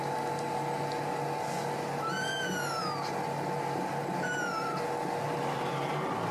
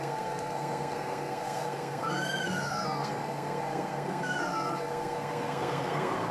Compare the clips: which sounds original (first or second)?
first